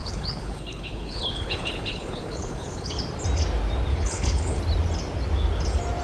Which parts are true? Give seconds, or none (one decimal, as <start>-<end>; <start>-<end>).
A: 3.0-3.9; 4.6-6.0